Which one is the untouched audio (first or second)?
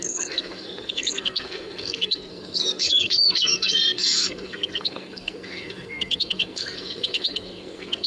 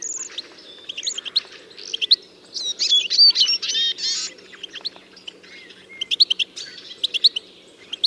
second